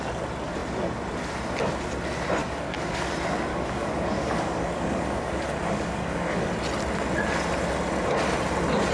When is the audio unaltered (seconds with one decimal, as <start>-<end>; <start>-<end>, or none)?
0.0-2.4; 3.1-3.5; 6.5-8.9